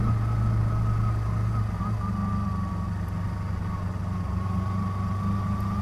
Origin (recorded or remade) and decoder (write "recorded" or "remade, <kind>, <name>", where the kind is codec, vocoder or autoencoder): recorded